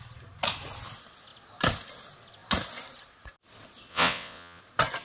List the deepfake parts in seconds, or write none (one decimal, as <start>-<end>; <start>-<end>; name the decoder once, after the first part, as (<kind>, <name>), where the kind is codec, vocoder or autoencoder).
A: 3.9-4.6 (vocoder, WaveNeXt)